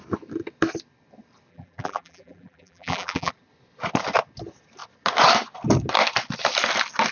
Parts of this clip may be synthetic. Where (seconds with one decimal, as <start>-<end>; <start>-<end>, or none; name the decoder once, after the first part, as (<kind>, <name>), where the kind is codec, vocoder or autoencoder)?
1.5-3.3 (vocoder, BigVGAN v2)